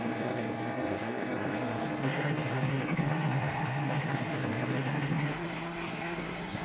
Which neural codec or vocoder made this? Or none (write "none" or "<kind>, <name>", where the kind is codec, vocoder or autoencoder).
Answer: codec, SNAC